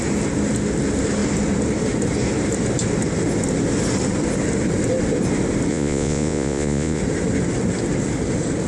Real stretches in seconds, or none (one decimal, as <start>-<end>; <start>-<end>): 0.0-5.7; 7.0-8.7

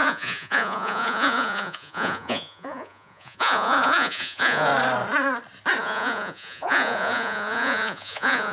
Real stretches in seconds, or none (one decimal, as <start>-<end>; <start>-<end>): 4.7-5.8

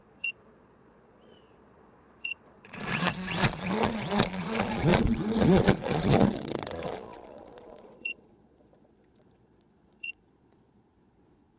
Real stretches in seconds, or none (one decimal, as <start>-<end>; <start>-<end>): none

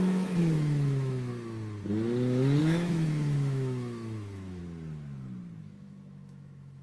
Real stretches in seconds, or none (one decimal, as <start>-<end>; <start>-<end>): 1.3-2.6; 4.6-5.6

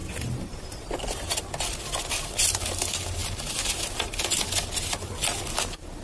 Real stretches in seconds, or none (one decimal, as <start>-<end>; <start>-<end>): 1.3-6.0